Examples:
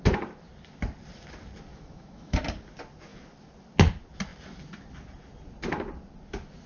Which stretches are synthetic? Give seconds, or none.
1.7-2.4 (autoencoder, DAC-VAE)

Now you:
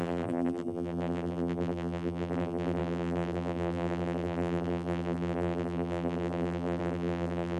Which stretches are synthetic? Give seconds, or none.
0.0-7.6 (vocoder, BigVGAN v2)